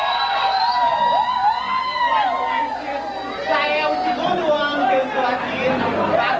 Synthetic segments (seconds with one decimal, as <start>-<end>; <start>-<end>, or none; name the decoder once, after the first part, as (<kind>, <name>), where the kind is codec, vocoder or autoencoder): none

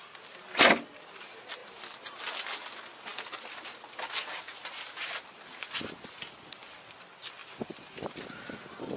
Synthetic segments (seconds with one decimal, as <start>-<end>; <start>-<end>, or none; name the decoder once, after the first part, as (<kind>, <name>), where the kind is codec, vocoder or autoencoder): none

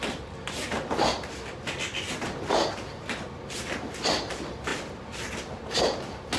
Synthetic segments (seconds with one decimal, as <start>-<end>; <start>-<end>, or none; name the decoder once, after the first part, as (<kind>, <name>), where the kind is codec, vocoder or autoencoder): none

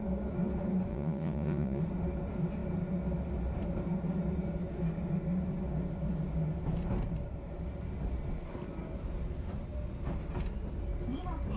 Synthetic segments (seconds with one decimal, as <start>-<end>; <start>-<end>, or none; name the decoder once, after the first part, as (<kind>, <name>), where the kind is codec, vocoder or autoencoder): 0.9-1.8 (vocoder, Vocos)

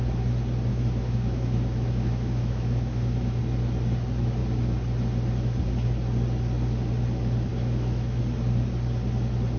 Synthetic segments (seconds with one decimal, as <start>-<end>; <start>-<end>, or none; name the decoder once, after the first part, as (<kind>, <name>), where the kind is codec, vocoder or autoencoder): 0.7-3.4 (autoencoder, DAC-VAE); 7.5-8.2

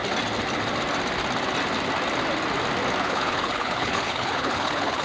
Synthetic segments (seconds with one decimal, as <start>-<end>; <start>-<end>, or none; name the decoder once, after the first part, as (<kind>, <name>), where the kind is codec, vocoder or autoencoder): 3.0-5.0 (codec, HILCodec)

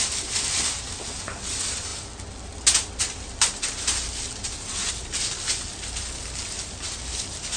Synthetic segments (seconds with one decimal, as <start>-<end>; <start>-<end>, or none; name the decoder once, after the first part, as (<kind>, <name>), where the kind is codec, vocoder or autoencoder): none

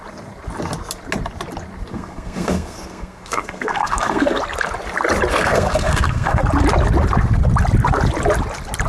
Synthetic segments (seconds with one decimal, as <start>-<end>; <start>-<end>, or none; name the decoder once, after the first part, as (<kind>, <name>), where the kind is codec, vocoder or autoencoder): 1.9-4.4 (codec, SNAC); 5.3-6.4